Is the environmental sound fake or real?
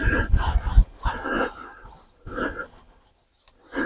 real